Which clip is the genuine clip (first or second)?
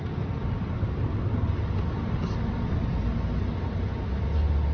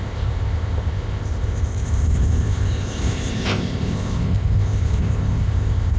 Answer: first